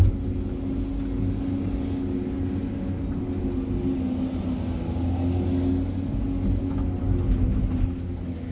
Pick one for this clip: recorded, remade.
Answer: recorded